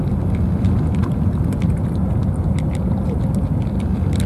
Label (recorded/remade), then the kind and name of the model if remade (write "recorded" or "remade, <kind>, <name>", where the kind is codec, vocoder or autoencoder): recorded